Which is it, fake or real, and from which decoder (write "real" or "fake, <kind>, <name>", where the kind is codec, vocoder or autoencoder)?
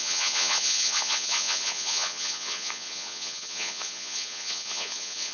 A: fake, vocoder, Vocos